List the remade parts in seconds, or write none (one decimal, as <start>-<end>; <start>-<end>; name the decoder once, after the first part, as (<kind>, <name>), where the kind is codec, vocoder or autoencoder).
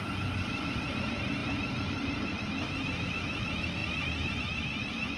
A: 3.8-4.4 (vocoder, BigVGAN v2)